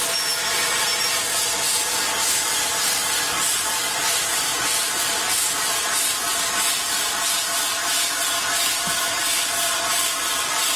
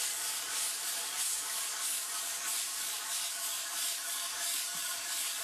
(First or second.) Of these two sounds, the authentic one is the first